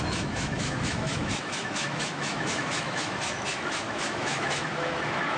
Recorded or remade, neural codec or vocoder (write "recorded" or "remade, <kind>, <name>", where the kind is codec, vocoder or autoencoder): remade, autoencoder, DAC-VAE